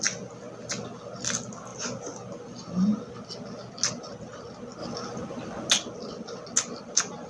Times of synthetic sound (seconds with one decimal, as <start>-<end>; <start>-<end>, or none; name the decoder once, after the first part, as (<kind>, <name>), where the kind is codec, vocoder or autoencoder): none